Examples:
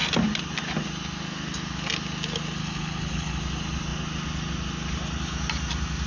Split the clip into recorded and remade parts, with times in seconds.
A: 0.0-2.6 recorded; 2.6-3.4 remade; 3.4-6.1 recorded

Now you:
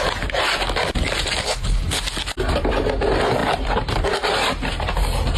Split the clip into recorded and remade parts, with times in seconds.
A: 0.0-1.4 recorded; 1.4-2.0 remade; 2.0-5.4 recorded

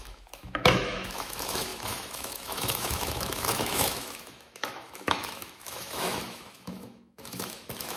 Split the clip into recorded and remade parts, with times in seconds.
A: 0.0-8.0 remade

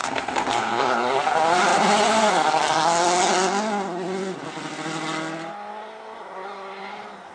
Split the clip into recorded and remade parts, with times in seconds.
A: 0.0-0.9 remade; 0.9-7.3 recorded

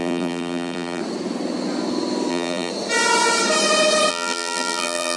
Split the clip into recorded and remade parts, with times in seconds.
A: 0.0-1.0 remade; 1.0-2.3 recorded; 2.3-2.7 remade; 2.7-4.1 recorded; 4.1-5.2 remade

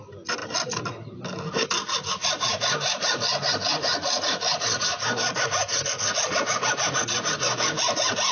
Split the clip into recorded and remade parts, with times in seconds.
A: 0.0-8.3 recorded

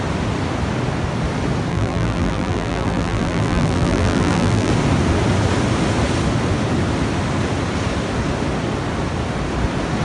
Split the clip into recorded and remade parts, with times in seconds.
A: 0.0-1.7 recorded; 1.7-4.7 remade; 4.7-10.0 recorded